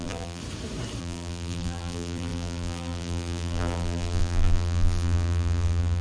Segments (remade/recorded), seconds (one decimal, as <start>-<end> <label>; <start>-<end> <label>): 0.0-0.4 remade; 0.4-1.0 recorded; 1.0-6.0 remade